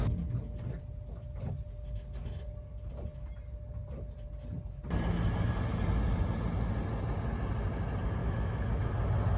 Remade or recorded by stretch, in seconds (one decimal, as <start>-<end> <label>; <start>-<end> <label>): 0.0-8.2 recorded; 8.2-8.9 remade; 8.9-9.4 recorded